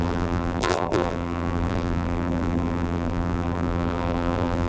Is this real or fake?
fake